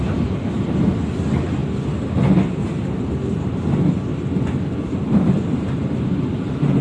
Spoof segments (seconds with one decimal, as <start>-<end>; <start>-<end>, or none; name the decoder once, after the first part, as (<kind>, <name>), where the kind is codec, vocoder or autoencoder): none

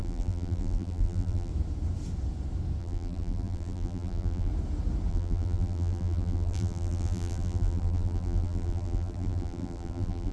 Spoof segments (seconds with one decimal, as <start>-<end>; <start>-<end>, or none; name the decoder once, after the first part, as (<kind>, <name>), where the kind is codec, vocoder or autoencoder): 0.0-1.5 (vocoder, BigVGAN v2); 2.8-4.5; 5.1-10.3